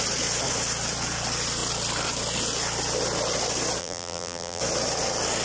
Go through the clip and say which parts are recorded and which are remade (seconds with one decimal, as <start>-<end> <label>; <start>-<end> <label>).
0.0-3.8 recorded; 3.8-4.6 remade; 4.6-5.4 recorded